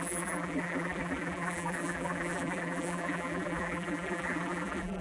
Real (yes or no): no